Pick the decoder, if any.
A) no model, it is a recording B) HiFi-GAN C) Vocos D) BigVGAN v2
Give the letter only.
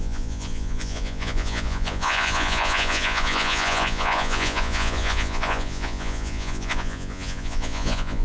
C